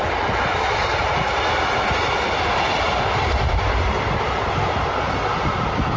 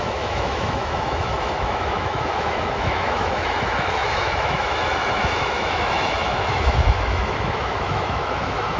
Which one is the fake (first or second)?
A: second